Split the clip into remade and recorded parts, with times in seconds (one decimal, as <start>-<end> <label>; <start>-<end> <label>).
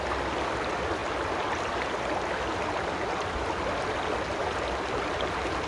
0.0-5.7 recorded